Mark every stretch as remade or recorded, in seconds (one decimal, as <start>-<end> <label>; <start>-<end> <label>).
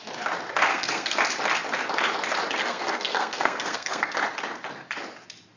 0.0-0.7 recorded; 0.7-1.2 remade; 1.2-2.6 recorded; 2.6-4.1 remade; 4.1-5.6 recorded